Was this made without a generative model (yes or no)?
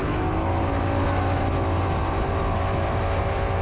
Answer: yes